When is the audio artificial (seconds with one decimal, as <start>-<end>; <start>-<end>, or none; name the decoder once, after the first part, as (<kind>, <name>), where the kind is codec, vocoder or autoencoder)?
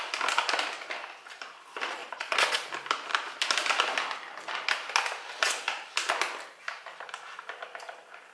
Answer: 2.0-2.7 (vocoder, Vocos)